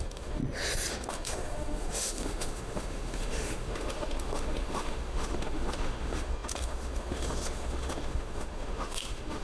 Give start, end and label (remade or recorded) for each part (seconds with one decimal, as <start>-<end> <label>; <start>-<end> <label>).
0.0-0.4 remade; 0.4-0.9 recorded; 0.9-9.4 remade